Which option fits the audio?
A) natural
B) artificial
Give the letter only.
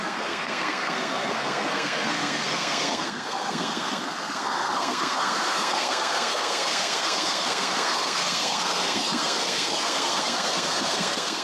B